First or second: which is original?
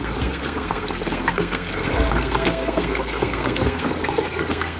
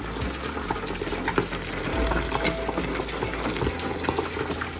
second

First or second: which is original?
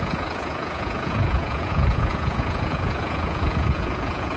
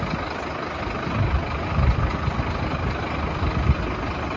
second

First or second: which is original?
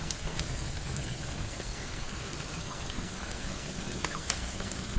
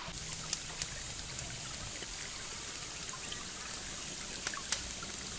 second